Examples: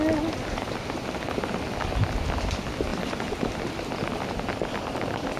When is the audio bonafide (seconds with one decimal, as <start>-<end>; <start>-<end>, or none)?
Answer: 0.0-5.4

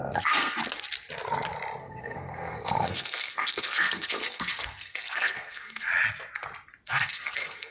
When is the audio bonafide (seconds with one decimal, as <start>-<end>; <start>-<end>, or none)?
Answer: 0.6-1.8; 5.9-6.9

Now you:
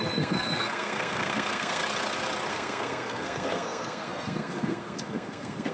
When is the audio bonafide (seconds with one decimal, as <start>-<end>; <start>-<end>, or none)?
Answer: 1.8-2.5

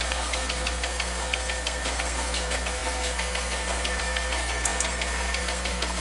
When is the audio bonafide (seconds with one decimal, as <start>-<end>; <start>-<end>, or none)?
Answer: none

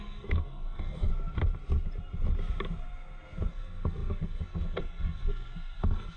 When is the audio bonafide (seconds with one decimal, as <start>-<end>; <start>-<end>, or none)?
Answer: 1.1-3.5

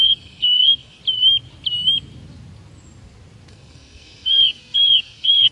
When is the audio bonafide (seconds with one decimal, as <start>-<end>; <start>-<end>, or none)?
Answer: 1.0-3.5